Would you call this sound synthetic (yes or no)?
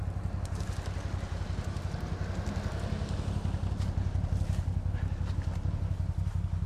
no